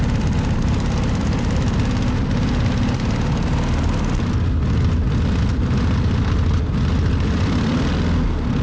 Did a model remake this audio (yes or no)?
no